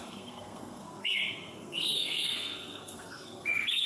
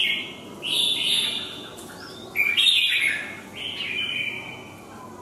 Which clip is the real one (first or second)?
second